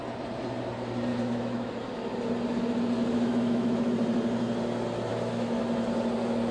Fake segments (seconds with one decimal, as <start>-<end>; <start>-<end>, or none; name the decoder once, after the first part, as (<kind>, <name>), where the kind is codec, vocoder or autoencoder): 1.1-1.7 (autoencoder, DAC-VAE); 3.0-3.9; 5.1-5.6